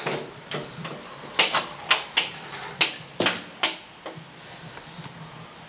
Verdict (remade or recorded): recorded